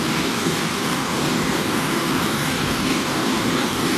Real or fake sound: fake